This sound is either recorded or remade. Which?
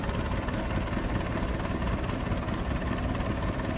recorded